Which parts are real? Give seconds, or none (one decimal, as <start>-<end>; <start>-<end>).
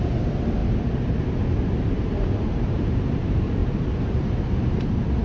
0.6-1.7